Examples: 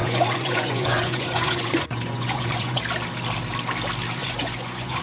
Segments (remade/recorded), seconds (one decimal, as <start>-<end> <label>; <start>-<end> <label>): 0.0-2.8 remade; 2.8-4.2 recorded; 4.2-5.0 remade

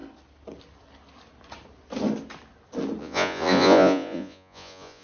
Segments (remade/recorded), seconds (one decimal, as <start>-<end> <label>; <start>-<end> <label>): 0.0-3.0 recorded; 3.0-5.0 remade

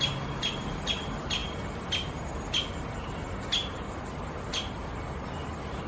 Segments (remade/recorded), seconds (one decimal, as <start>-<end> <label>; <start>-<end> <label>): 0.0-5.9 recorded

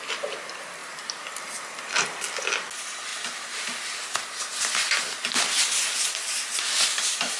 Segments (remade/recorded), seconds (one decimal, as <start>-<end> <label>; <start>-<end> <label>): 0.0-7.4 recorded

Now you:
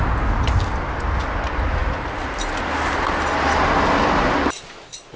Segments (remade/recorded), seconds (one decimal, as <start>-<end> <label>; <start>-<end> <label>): 0.0-5.2 recorded

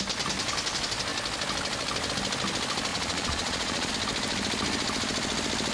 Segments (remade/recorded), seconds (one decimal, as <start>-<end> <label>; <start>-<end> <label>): 0.0-2.9 recorded; 2.9-3.9 remade; 3.9-5.7 recorded

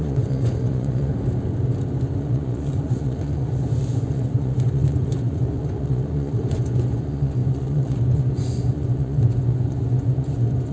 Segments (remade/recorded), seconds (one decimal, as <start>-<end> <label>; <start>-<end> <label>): 0.0-1.1 remade; 1.1-2.2 recorded; 2.2-10.7 remade